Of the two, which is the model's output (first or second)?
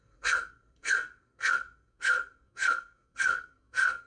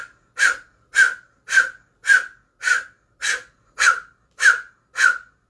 first